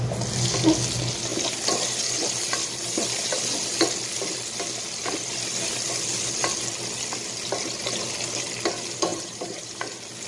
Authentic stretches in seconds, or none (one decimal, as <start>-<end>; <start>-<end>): 0.0-9.1; 9.8-10.3